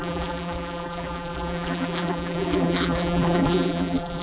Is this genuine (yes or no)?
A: no